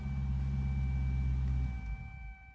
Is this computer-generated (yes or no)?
no